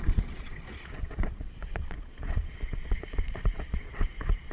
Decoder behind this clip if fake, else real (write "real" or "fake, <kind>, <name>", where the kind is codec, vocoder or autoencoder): fake, vocoder, Vocos